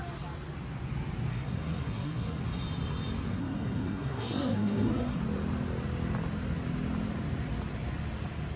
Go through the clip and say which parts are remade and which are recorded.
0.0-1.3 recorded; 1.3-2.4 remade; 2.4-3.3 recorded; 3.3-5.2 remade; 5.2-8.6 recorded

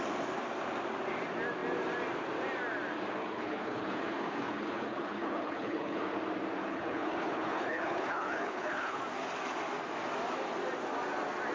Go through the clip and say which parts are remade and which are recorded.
0.0-3.2 recorded; 3.2-6.0 remade; 6.0-6.6 recorded; 6.6-9.0 remade; 9.0-11.5 recorded

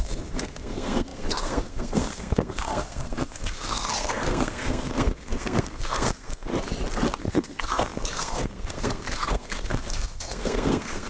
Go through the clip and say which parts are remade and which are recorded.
0.0-6.5 remade; 6.5-7.2 recorded; 7.2-11.1 remade

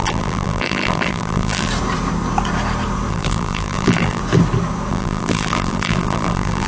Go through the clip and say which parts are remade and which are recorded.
0.0-1.7 remade; 1.7-3.1 recorded; 3.1-4.2 remade; 4.2-4.9 recorded; 4.9-6.7 remade